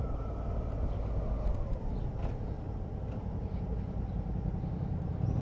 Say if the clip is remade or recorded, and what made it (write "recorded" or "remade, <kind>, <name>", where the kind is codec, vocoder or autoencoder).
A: recorded